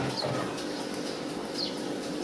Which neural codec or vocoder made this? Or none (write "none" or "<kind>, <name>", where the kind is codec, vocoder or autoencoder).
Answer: none